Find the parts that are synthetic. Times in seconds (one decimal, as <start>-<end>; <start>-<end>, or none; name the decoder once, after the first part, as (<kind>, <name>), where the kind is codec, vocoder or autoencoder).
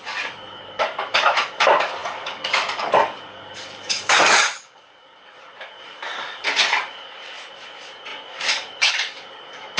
0.0-9.8 (codec, DAC)